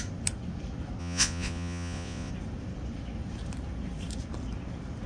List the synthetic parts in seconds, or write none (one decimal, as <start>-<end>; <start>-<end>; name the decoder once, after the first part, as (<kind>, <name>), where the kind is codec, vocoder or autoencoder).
1.0-2.3 (vocoder, Vocos)